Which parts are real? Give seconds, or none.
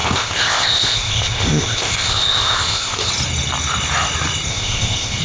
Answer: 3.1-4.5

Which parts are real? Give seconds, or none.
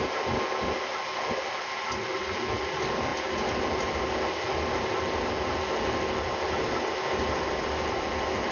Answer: 0.0-8.5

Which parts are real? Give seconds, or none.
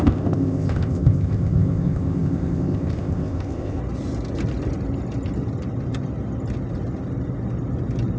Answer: 3.8-8.2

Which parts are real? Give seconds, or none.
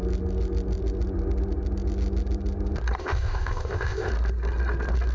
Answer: 0.0-3.0; 4.1-5.1